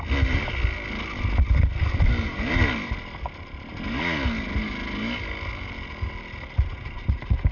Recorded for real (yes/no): yes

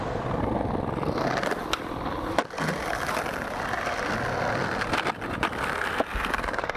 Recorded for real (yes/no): yes